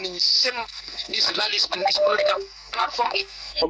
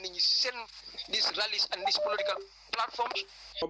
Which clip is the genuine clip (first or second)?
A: second